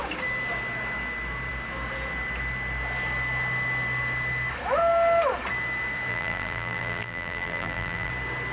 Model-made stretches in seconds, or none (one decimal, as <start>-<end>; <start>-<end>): 6.1-8.1